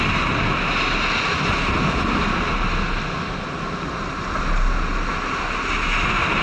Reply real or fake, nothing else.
real